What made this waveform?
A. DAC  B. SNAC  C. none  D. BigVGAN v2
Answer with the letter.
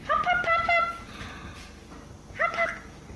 C